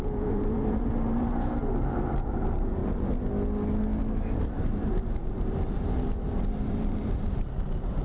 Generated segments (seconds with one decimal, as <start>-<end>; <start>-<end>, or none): 0.0-2.8; 4.0-8.0